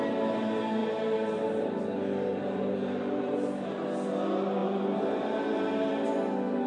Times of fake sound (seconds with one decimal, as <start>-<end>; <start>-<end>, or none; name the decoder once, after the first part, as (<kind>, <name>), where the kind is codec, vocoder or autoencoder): 0.8-1.8 (vocoder, BigVGAN v2); 2.3-3.7